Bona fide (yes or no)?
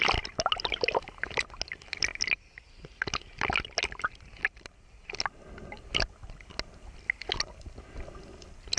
yes